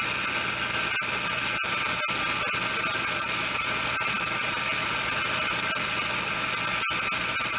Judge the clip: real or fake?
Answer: real